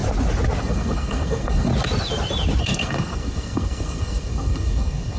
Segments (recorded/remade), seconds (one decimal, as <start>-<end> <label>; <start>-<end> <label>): 0.0-0.6 recorded; 0.6-1.7 remade; 1.7-2.6 recorded; 2.6-5.2 remade